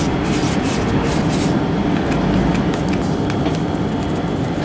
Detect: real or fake real